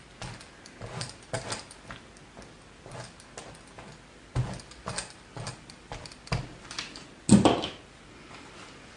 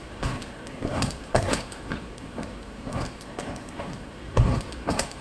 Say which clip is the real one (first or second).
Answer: first